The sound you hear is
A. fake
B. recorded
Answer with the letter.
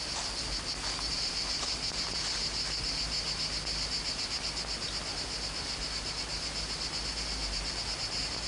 B